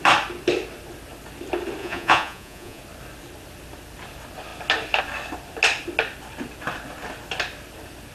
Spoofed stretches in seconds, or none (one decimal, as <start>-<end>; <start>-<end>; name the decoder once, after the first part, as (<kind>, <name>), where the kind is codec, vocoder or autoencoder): 1.8-2.8 (vocoder, Vocos)